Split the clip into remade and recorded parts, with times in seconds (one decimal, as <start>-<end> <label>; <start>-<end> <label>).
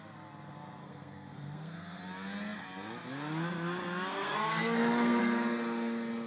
0.0-0.8 recorded; 0.8-2.0 remade; 2.0-4.1 recorded; 4.1-5.2 remade; 5.2-6.3 recorded